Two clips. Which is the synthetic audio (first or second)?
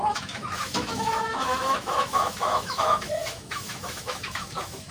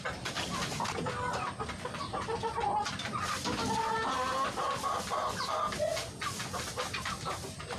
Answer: first